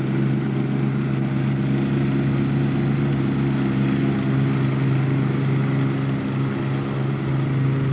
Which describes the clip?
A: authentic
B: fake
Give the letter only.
A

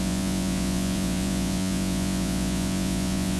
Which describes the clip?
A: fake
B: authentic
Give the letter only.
A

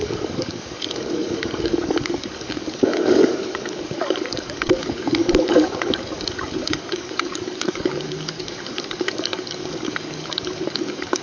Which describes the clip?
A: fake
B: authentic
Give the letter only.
A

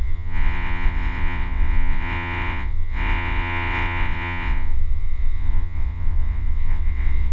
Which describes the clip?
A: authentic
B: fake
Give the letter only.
B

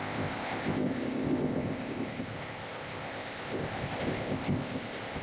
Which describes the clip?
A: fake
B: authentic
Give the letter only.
A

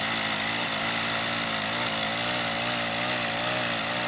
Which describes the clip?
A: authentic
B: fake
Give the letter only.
A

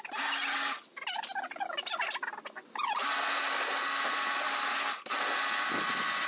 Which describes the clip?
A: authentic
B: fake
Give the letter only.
A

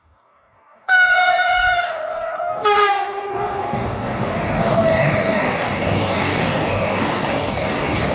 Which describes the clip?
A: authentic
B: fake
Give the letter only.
B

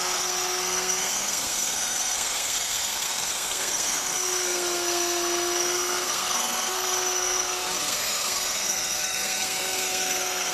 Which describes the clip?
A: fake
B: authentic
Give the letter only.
A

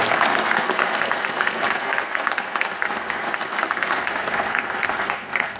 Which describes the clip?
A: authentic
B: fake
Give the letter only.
B